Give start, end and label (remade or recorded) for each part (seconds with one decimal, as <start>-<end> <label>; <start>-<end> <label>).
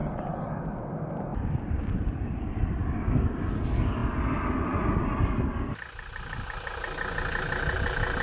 0.0-1.3 recorded; 1.3-2.8 remade; 2.8-8.2 recorded